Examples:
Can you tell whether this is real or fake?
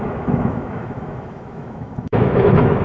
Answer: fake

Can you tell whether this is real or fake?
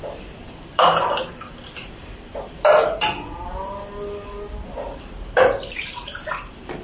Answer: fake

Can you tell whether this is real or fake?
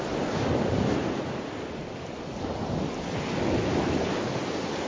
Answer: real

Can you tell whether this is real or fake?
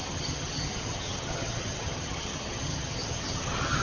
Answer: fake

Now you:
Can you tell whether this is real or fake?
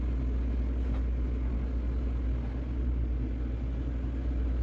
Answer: real